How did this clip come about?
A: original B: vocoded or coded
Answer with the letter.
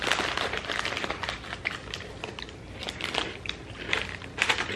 A